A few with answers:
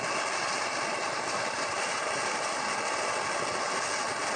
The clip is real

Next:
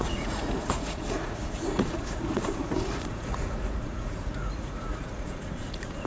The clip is fake